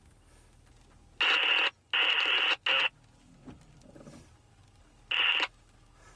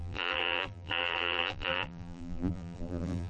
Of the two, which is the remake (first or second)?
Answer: second